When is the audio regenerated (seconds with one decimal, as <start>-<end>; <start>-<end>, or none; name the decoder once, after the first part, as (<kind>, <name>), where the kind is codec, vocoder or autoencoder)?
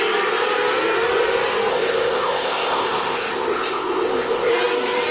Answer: 1.7-4.5 (codec, ZipCodec)